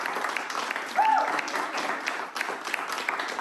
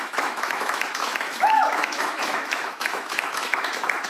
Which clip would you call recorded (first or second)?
first